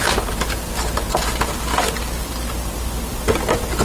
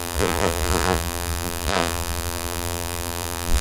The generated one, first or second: second